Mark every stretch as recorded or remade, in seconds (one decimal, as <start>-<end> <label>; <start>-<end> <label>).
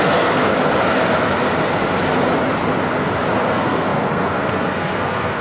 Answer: 0.0-0.5 remade; 0.5-3.5 recorded; 3.5-5.4 remade